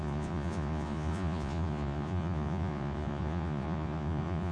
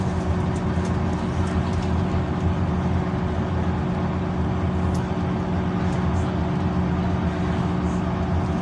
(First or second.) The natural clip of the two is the second